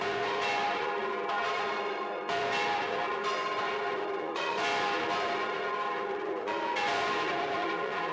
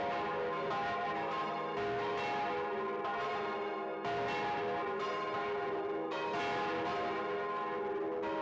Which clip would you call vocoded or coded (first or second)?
first